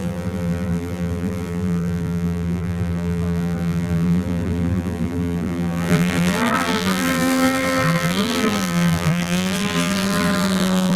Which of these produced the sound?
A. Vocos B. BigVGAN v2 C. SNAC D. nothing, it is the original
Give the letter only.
B